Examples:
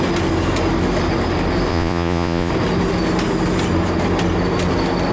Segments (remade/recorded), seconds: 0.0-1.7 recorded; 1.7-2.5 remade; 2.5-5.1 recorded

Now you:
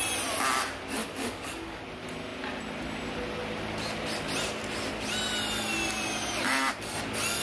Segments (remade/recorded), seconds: 0.0-1.0 recorded; 1.0-1.8 remade; 1.8-7.4 recorded